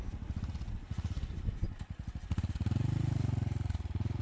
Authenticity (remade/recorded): recorded